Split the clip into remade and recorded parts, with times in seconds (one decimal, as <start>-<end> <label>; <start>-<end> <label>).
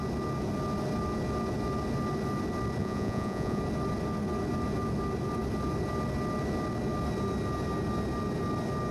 0.0-2.8 recorded; 2.8-3.6 remade; 3.6-8.9 recorded